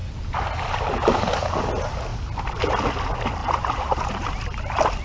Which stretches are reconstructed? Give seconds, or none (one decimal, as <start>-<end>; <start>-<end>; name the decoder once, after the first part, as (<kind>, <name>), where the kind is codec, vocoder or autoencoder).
3.4-4.4 (vocoder, BigVGAN v2)